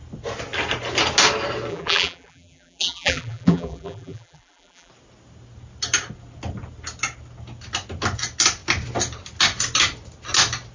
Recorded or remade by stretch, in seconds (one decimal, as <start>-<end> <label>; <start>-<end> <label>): 0.0-1.7 recorded; 1.7-4.9 remade; 4.9-10.7 recorded